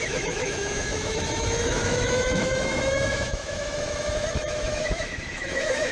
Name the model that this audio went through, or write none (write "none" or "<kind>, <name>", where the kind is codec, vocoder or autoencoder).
autoencoder, DAC-VAE